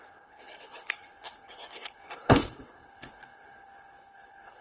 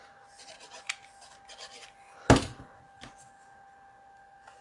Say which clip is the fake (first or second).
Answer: first